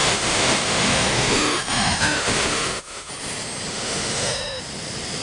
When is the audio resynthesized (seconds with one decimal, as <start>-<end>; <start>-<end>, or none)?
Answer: 0.0-3.1; 3.7-4.6